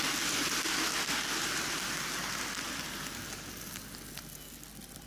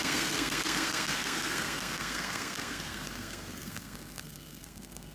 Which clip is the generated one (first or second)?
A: second